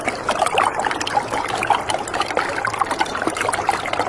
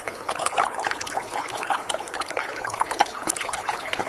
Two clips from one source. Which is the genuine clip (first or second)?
first